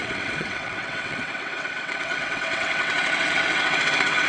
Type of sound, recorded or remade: remade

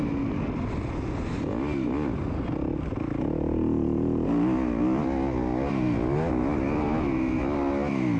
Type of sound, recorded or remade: recorded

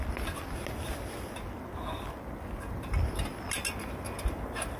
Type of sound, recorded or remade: recorded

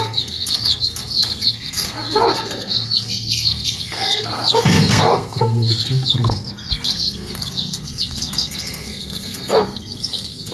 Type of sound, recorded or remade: remade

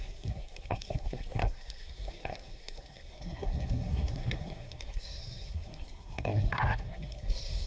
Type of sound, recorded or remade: remade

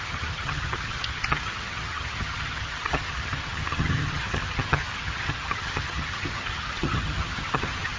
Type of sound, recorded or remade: remade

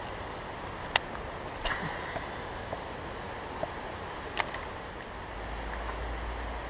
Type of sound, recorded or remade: recorded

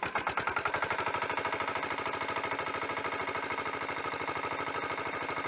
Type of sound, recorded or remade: recorded